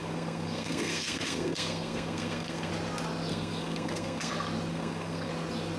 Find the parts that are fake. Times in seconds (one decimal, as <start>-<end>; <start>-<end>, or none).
0.0-2.7; 3.3-4.3; 4.7-5.3

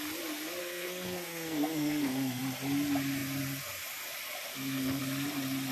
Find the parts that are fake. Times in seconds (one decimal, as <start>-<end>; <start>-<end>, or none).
0.6-2.4; 4.5-5.0

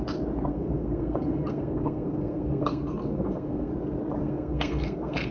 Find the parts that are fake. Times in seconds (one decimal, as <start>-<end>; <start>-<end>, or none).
0.5-3.7; 4.2-5.3

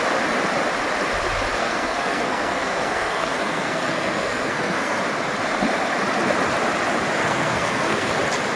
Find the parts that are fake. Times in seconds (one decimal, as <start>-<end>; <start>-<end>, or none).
1.6-5.0; 7.2-8.1

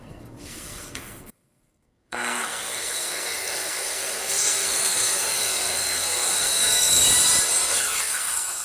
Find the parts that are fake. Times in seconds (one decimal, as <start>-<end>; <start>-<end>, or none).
0.0-7.0; 7.7-8.6